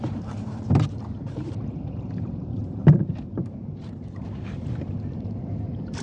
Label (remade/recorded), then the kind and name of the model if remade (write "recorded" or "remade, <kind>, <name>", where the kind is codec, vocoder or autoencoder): remade, vocoder, BigVGAN v2